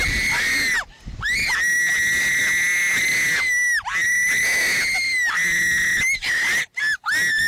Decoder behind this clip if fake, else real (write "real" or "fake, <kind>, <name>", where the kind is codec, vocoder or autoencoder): real